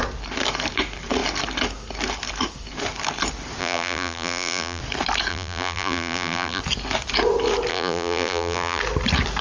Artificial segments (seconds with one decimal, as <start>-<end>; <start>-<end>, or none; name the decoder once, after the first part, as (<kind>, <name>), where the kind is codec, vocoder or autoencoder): 3.6-4.8 (vocoder, BigVGAN v2); 5.3-6.6; 7.7-8.8